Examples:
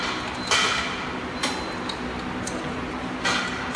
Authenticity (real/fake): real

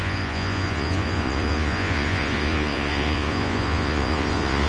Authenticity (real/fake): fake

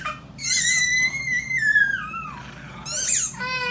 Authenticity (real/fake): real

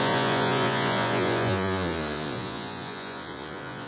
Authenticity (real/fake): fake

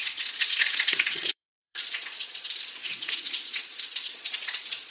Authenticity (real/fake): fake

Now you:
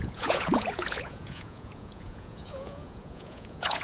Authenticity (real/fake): fake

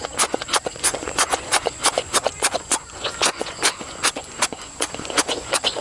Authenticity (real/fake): fake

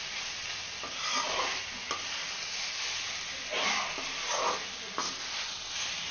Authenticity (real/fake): real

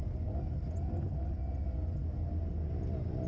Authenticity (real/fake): real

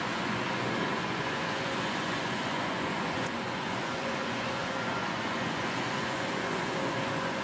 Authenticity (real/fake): fake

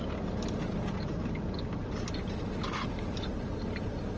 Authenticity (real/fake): real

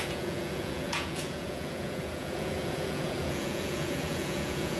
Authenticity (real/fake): fake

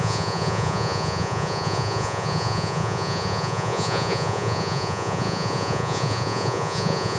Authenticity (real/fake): fake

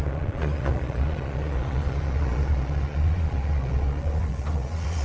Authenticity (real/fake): fake